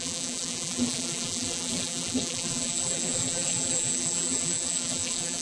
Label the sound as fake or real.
fake